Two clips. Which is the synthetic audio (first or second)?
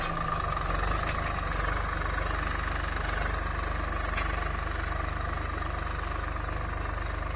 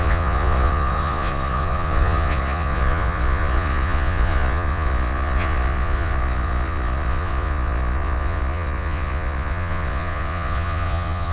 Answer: second